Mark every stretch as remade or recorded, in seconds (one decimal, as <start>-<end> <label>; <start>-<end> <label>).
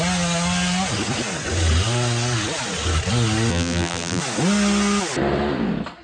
0.0-3.5 recorded; 3.5-4.2 remade; 4.2-6.0 recorded